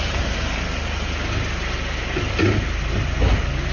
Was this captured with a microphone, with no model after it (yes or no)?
yes